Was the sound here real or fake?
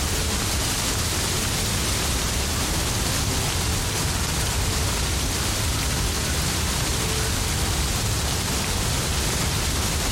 real